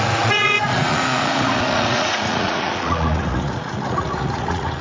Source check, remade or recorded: remade